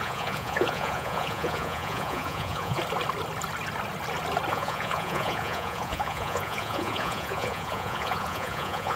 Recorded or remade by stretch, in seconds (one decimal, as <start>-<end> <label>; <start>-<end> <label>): 0.0-2.8 remade; 2.8-4.5 recorded; 4.5-9.0 remade